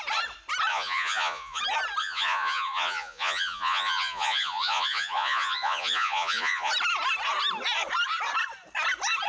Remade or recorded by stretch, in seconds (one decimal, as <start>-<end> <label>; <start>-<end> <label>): 0.0-0.7 recorded; 0.7-1.6 remade; 1.6-2.0 recorded; 2.0-6.7 remade; 6.7-9.3 recorded